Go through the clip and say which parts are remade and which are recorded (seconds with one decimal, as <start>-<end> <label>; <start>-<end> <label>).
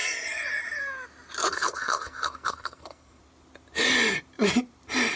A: 0.0-1.4 recorded; 1.4-3.2 remade; 3.2-5.2 recorded